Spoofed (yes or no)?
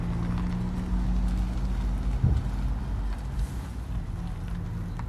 no